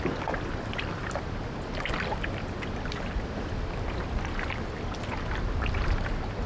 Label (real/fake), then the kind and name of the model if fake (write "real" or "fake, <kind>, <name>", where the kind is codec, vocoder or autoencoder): real